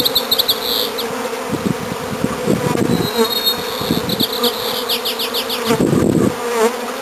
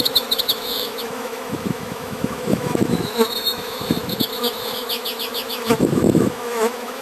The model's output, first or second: second